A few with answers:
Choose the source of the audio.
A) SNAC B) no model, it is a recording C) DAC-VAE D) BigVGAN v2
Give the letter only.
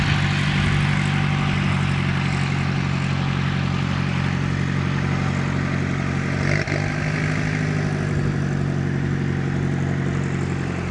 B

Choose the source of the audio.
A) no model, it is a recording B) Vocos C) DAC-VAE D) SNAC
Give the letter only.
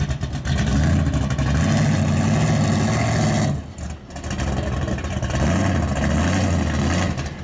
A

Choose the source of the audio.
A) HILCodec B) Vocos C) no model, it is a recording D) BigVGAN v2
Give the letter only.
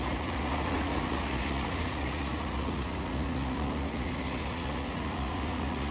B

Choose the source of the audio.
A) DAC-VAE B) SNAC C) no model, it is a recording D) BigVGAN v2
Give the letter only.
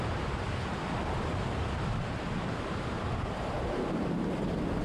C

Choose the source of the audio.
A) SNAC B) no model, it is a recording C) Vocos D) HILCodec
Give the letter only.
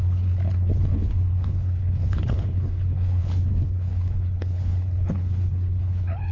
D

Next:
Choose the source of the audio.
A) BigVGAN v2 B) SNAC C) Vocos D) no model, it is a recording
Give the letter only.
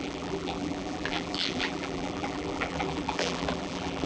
A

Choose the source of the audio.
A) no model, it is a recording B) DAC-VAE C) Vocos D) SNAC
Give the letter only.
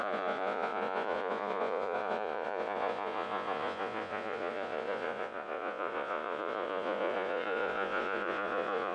C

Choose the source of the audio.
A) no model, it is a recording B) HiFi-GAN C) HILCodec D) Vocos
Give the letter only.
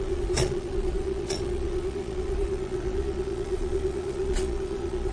D